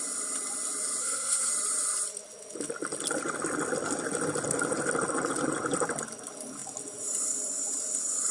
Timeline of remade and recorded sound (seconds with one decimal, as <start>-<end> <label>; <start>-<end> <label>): 0.0-1.0 recorded; 1.0-1.5 remade; 1.5-8.3 recorded